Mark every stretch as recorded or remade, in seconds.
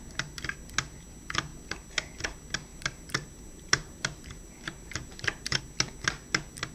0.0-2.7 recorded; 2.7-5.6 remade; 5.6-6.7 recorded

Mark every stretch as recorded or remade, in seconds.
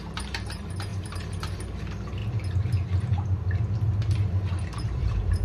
0.0-2.2 remade; 2.2-4.8 recorded; 4.8-5.4 remade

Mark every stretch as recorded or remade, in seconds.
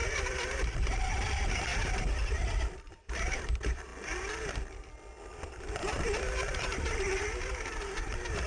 0.0-3.9 remade; 3.9-5.8 recorded; 5.8-8.5 remade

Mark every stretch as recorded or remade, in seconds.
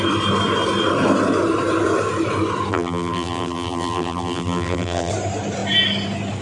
0.0-2.7 recorded; 2.7-5.1 remade; 5.1-6.4 recorded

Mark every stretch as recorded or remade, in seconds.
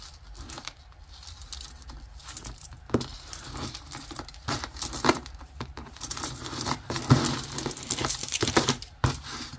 0.0-2.2 recorded; 2.2-7.0 remade; 7.0-8.0 recorded; 8.0-9.6 remade